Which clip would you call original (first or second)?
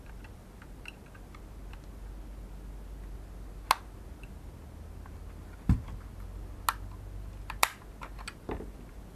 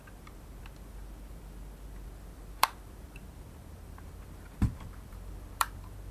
first